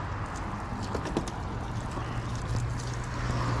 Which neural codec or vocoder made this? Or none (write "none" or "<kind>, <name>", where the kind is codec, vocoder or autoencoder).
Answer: none